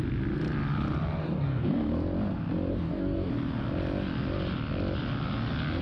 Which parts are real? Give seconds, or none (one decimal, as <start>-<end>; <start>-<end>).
0.0-1.2; 1.9-2.7; 3.3-5.8